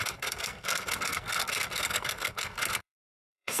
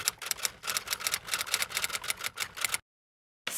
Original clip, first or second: second